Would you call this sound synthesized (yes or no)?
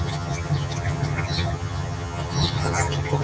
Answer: yes